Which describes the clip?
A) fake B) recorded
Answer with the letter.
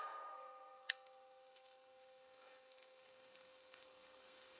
A